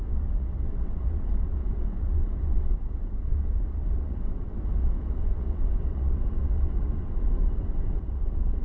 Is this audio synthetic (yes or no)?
yes